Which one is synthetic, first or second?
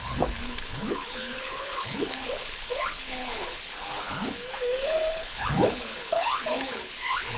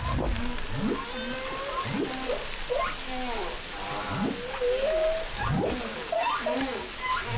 first